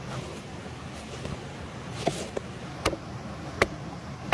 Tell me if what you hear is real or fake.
real